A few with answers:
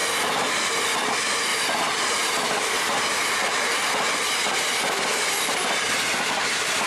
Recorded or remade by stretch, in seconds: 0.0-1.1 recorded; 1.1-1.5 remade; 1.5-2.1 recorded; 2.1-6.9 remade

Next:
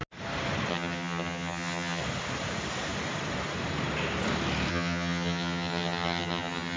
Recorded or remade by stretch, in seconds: 0.0-0.7 recorded; 0.7-2.0 remade; 2.0-4.7 recorded; 4.7-6.8 remade